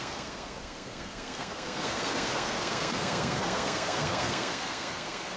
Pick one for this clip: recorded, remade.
remade